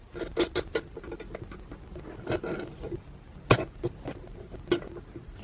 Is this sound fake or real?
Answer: real